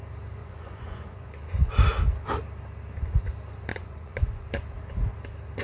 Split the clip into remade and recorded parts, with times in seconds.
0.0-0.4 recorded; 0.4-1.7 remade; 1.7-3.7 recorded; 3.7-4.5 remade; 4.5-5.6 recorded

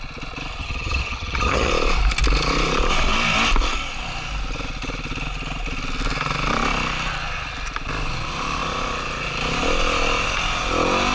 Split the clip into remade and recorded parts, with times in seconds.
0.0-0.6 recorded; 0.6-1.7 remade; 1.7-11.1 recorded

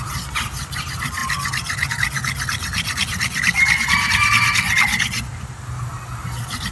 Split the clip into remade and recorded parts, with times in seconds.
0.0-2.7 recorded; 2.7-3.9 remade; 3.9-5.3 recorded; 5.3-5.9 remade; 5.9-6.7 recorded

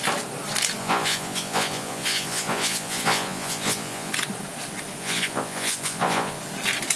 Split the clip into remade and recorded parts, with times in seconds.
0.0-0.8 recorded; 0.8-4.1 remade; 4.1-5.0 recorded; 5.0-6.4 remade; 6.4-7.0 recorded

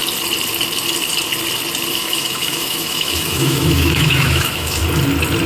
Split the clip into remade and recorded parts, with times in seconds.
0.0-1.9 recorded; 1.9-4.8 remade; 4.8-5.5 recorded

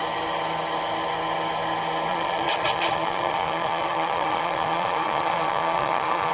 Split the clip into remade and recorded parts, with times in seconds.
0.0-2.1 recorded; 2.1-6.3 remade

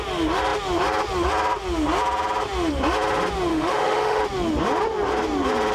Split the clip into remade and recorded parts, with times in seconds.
0.0-3.5 recorded; 3.5-4.2 remade; 4.2-5.7 recorded